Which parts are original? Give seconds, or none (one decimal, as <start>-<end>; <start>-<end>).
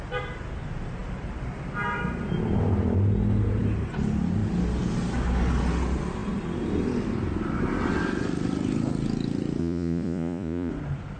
0.0-9.6; 10.7-11.2